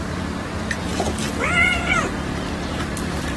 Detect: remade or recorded recorded